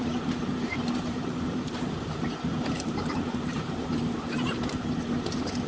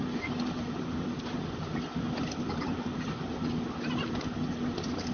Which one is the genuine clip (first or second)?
second